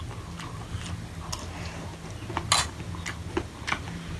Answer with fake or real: real